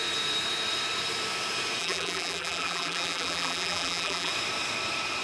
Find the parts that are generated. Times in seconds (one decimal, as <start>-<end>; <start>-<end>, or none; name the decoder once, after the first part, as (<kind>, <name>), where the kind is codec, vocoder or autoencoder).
1.8-4.3 (vocoder, BigVGAN v2)